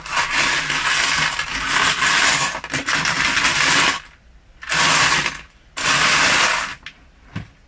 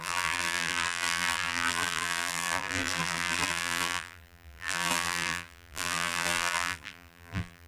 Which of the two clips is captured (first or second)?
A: first